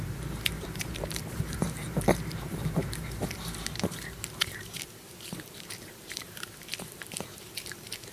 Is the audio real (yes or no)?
no